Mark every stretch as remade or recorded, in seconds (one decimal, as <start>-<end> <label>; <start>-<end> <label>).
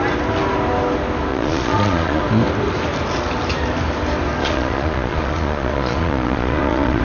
0.0-1.3 recorded; 1.3-2.2 remade; 2.2-4.4 recorded; 4.4-7.0 remade